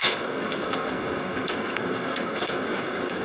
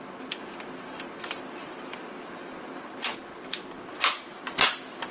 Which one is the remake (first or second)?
first